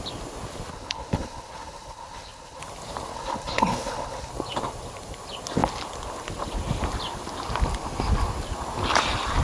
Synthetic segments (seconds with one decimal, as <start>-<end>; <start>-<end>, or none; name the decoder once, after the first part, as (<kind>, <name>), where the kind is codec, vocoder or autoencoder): 0.7-2.6 (codec, HILCodec); 3.1-4.3